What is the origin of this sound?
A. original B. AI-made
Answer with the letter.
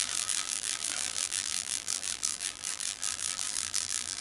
B